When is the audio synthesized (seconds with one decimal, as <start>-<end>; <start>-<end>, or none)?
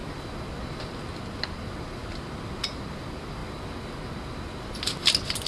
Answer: none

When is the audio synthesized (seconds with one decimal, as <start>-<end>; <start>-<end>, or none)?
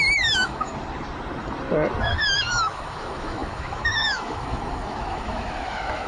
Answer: 0.0-0.7; 2.0-6.1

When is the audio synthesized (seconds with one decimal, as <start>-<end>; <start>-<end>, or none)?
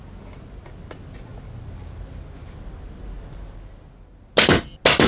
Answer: none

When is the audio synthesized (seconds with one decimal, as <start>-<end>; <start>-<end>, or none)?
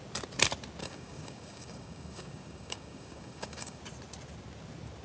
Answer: 0.8-3.8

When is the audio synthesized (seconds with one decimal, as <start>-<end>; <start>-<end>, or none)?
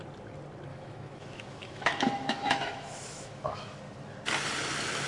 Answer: 0.7-3.8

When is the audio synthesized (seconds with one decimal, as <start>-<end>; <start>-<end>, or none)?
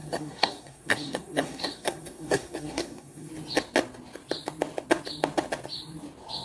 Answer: 0.0-3.3